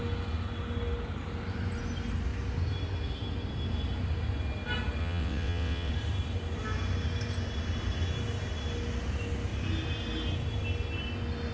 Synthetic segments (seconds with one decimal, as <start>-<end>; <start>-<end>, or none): 5.0-5.9